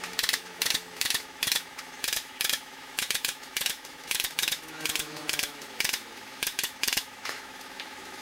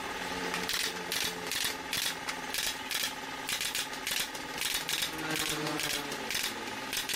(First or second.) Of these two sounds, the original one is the second